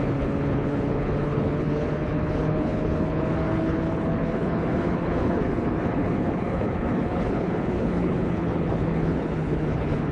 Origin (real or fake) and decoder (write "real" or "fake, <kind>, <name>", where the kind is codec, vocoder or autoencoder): fake, codec, HILCodec